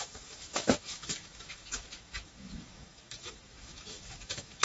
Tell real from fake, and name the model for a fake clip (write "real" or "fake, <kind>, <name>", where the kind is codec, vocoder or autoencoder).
fake, autoencoder, DAC-VAE